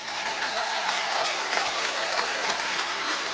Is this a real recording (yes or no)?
no